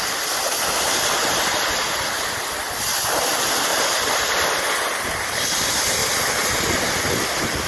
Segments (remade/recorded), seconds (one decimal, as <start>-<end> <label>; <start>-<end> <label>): 0.0-3.7 recorded; 3.7-4.3 remade; 4.3-7.7 recorded